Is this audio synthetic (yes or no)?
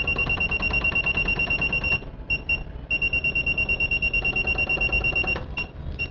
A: no